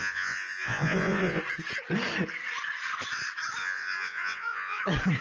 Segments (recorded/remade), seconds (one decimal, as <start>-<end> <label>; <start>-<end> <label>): 0.0-1.4 remade; 1.4-3.6 recorded; 3.6-4.8 remade; 4.8-5.2 recorded